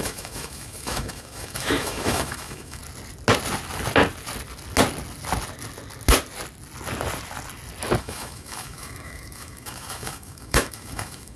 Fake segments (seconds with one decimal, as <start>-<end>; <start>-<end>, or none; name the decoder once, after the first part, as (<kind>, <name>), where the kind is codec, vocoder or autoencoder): 0.0-2.8 (autoencoder, DAC-VAE); 8.0-11.4